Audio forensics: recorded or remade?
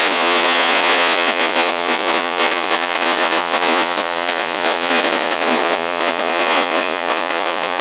remade